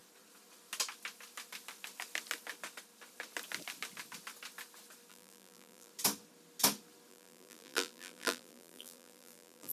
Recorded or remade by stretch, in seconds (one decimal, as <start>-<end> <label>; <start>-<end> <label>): 0.0-5.1 recorded; 5.1-5.9 remade; 5.9-7.1 recorded; 7.1-9.7 remade